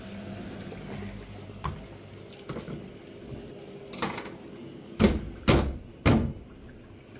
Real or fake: real